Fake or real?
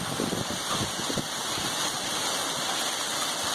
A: real